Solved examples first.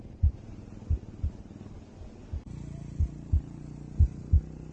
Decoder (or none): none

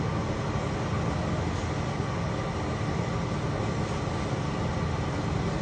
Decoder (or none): none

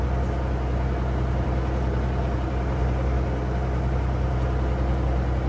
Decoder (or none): none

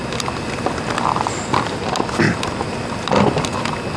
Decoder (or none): none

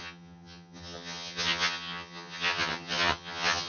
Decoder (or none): vocoder, HiFi-GAN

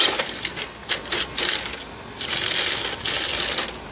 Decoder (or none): none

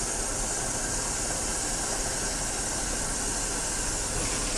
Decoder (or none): none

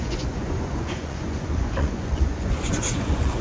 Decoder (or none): vocoder, Vocos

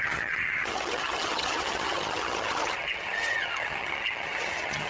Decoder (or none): vocoder, HiFi-GAN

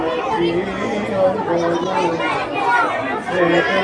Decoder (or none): none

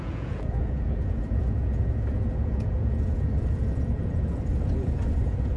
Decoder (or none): vocoder, Vocos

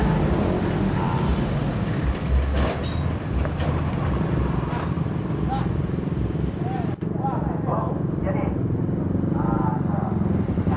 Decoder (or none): none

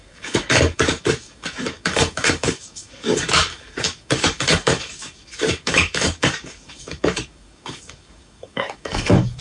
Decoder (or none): codec, DAC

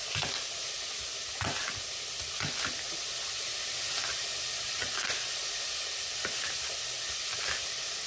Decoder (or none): none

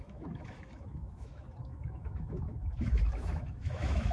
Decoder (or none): autoencoder, DAC-VAE